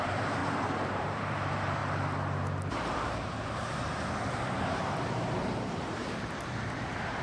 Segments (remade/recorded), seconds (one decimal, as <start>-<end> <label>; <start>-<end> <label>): 0.0-0.4 remade; 0.4-1.0 recorded; 1.0-1.8 remade; 1.8-2.7 recorded; 2.7-7.2 remade